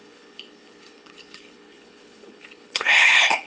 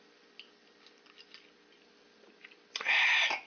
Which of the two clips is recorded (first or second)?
second